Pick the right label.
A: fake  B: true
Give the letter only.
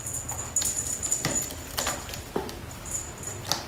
B